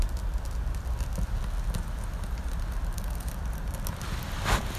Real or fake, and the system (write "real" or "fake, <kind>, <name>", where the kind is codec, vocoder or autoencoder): real